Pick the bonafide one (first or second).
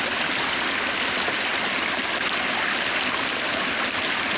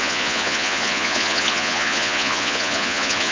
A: first